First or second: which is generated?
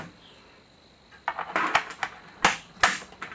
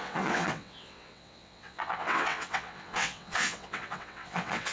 second